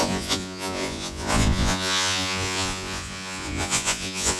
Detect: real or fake fake